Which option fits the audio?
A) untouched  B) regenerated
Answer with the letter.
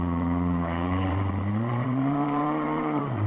B